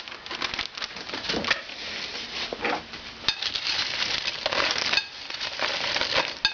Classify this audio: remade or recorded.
recorded